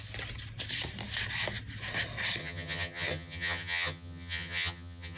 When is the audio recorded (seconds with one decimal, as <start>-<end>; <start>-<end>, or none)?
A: 0.0-2.4